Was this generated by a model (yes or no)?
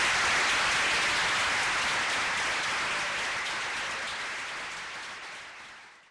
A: no